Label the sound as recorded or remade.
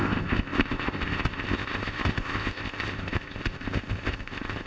remade